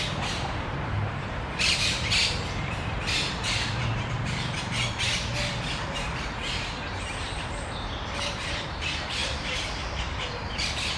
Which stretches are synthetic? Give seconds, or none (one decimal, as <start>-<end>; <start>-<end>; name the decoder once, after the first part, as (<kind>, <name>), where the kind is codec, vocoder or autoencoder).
0.0-5.3 (vocoder, BigVGAN v2); 6.9-11.0

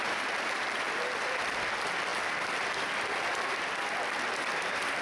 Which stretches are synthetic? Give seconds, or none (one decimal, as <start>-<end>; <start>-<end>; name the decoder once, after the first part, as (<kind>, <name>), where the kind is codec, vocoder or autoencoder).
none

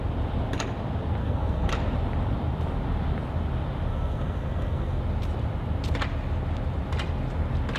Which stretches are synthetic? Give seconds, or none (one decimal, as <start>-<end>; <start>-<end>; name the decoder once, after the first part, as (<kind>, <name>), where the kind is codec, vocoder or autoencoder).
1.2-1.7 (codec, SNAC); 3.9-5.0

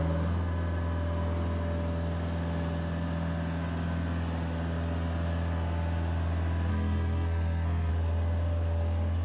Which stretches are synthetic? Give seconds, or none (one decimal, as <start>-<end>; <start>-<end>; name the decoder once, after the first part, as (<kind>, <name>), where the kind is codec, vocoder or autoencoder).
6.7-7.9 (codec, SNAC)

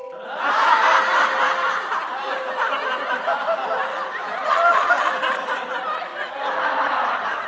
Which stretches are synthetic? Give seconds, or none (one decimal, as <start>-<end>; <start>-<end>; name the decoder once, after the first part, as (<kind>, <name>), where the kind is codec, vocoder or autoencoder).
0.0-6.1 (vocoder, BigVGAN v2); 6.7-7.5

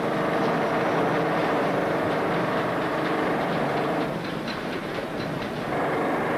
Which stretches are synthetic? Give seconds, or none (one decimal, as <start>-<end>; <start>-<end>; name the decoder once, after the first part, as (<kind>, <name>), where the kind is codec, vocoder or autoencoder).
1.4-2.2 (vocoder, BigVGAN v2); 2.9-5.4